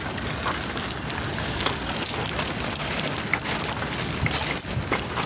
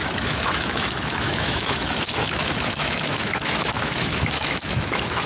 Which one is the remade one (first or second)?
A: second